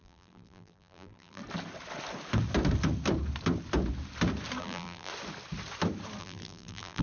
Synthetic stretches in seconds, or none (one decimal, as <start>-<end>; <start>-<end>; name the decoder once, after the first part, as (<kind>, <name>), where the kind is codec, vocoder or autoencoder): 0.0-1.4 (vocoder, BigVGAN v2); 4.6-5.1; 6.2-7.0